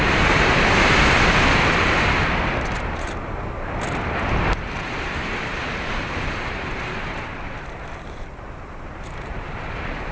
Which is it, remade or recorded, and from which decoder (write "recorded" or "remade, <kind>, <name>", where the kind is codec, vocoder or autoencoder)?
remade, vocoder, BigVGAN v2